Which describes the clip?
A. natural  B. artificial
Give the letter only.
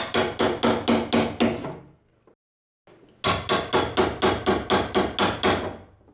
A